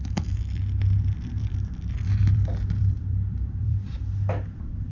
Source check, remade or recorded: remade